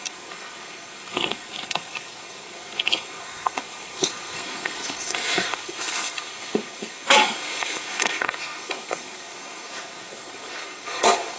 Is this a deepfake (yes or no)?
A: yes